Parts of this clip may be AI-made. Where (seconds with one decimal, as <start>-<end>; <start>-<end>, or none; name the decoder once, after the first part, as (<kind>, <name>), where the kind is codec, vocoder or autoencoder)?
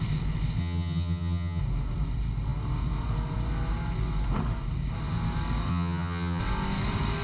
0.6-1.6 (vocoder, HiFi-GAN); 5.7-6.4